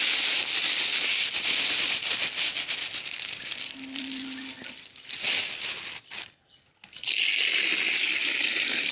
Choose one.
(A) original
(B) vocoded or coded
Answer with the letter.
A